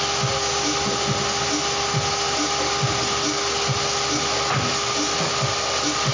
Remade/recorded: recorded